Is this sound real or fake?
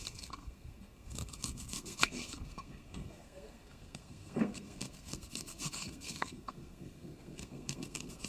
fake